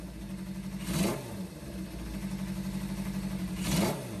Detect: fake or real real